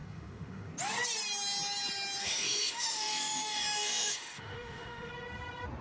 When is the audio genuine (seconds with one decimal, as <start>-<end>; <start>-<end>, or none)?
0.7-2.2; 5.1-5.8